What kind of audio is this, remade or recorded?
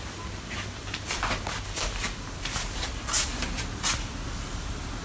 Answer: recorded